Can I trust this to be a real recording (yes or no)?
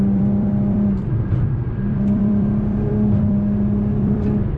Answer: no